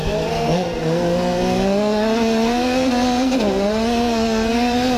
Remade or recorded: remade